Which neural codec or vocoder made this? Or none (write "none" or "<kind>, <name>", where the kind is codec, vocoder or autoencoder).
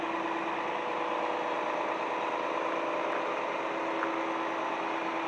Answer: none